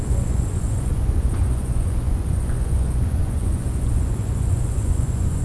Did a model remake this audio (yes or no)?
yes